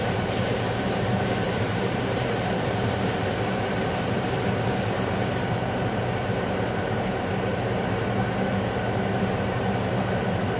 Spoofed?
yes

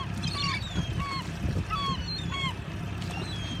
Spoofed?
no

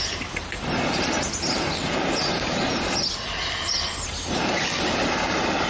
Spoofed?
yes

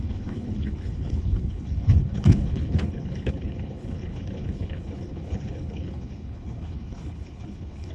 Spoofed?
yes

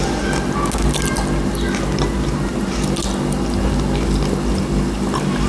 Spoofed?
no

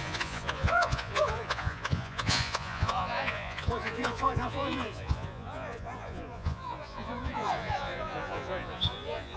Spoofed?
yes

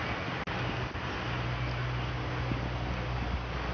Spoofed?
no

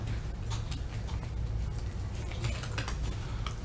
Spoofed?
no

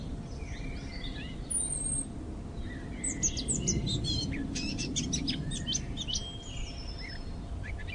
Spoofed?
no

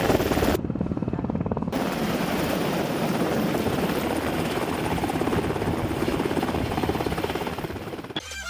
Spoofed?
yes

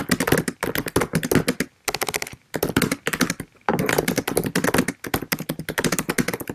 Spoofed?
no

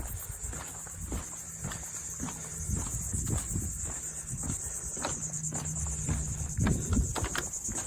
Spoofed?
no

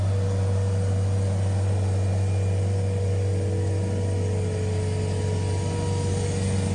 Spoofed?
no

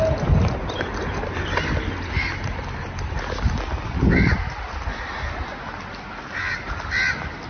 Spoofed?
no